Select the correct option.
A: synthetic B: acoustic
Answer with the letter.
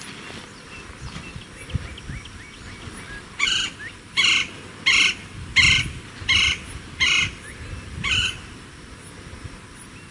B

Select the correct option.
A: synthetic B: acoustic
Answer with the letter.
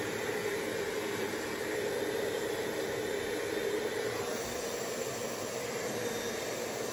A